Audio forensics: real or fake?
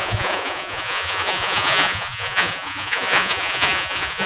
fake